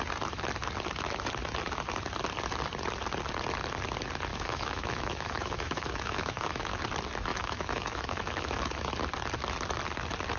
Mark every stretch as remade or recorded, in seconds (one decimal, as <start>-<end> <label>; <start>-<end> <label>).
0.0-4.3 recorded; 4.3-6.8 remade; 6.8-7.3 recorded; 7.3-8.9 remade; 8.9-10.4 recorded